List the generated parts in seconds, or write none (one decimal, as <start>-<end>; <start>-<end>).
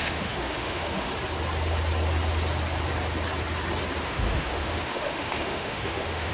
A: 0.0-1.1; 4.0-6.3